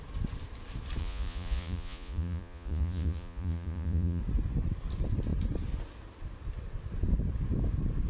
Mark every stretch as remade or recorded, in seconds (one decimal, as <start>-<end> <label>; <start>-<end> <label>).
0.0-1.0 recorded; 1.0-4.2 remade; 4.2-8.1 recorded